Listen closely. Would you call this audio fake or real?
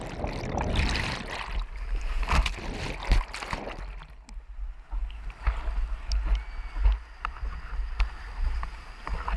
real